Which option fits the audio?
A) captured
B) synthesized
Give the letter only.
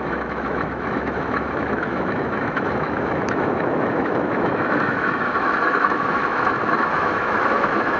B